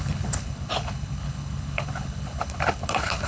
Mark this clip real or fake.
fake